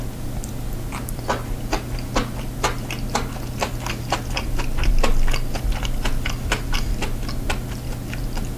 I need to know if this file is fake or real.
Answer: real